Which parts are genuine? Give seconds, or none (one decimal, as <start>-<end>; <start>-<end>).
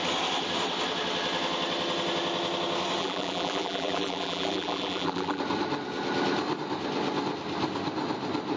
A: 0.0-3.0; 5.4-8.6